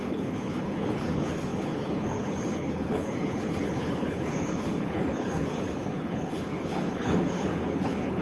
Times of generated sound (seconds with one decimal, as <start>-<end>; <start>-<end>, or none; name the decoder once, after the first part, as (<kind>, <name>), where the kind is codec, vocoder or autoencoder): 0.0-8.2 (codec, HILCodec)